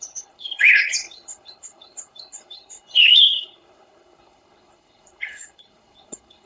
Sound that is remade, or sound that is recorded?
remade